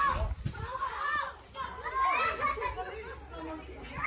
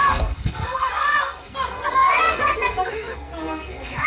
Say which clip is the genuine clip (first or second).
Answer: first